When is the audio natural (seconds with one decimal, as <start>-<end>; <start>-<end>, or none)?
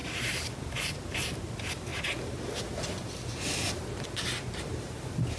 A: 1.9-4.6